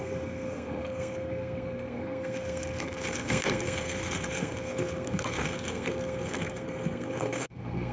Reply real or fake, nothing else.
fake